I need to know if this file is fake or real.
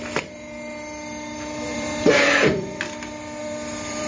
fake